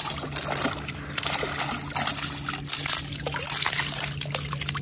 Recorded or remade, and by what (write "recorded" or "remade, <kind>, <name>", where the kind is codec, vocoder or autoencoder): recorded